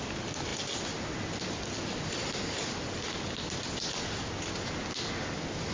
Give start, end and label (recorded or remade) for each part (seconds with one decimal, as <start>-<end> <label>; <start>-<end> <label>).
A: 0.0-5.7 recorded